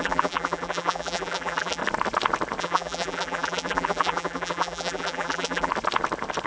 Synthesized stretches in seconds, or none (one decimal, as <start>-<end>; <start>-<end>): 0.0-1.8; 2.6-5.7